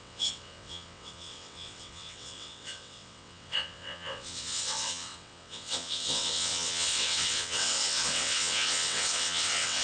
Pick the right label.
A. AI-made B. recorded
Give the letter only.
A